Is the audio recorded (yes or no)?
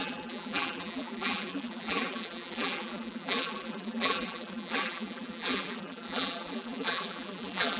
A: no